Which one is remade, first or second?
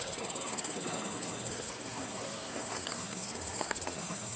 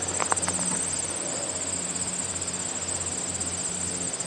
first